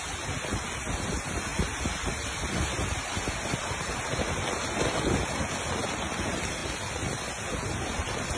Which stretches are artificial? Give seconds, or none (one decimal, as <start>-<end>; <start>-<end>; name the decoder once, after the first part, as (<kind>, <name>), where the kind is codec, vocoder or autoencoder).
6.6-7.3 (vocoder, BigVGAN v2)